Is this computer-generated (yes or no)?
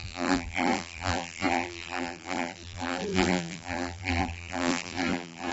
yes